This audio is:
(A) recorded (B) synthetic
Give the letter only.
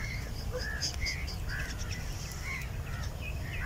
A